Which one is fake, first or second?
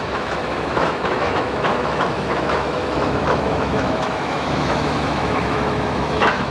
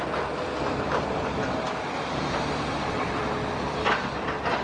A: first